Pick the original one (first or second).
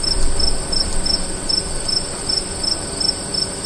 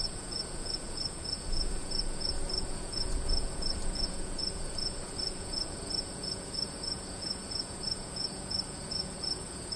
first